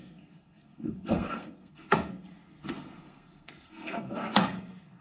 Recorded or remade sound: remade